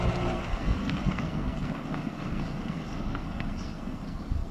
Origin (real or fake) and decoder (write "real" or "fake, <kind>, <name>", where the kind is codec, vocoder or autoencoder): fake, codec, SNAC